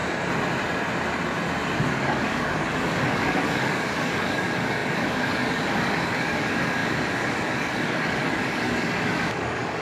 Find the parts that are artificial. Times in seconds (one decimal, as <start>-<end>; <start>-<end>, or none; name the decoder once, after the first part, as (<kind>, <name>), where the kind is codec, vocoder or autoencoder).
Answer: 1.8-9.8 (codec, DAC)